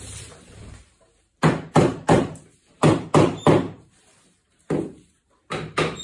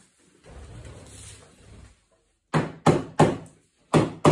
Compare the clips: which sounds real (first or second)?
second